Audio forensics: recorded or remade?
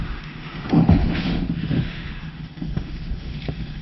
remade